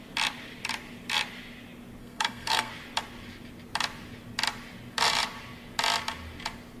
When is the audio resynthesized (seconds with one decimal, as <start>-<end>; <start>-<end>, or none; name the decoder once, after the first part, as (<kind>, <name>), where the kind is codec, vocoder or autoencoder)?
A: 2.0-2.7 (codec, SNAC)